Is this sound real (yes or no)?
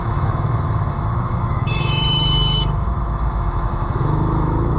no